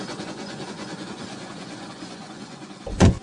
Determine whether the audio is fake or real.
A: fake